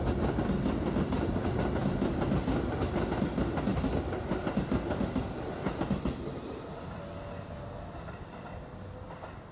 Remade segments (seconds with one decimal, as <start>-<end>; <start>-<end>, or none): none